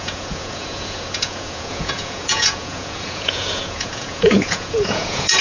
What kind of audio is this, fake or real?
fake